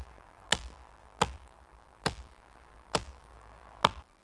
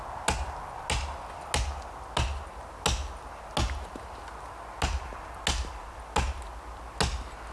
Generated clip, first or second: first